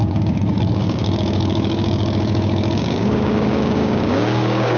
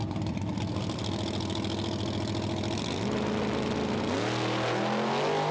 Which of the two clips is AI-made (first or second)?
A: first